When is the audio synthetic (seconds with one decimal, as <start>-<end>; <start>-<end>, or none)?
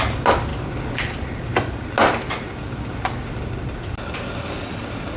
none